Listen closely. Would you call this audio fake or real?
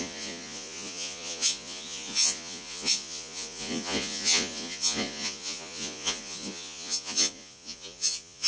fake